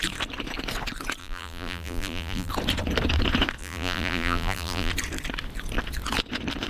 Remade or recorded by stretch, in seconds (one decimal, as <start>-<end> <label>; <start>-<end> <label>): 0.0-1.2 recorded; 1.2-2.5 remade; 2.5-3.6 recorded; 3.6-4.9 remade; 4.9-6.7 recorded